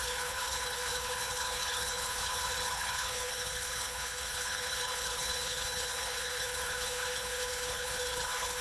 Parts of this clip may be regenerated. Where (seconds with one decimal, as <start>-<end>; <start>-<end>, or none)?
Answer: 0.0-8.6